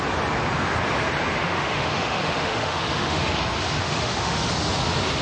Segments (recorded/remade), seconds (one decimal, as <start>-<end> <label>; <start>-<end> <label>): 0.0-1.4 recorded; 1.4-3.3 remade; 3.3-3.8 recorded; 3.8-4.5 remade; 4.5-5.2 recorded